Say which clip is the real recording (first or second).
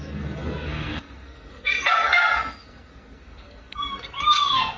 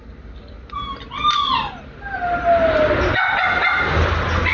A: second